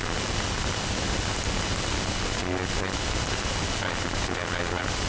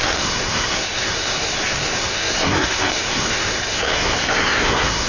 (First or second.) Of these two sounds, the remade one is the second